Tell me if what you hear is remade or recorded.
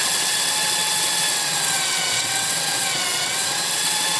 remade